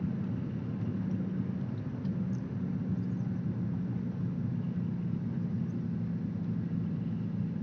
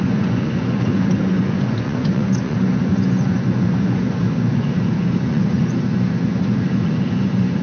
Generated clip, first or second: second